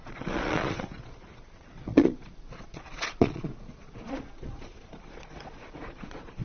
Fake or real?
fake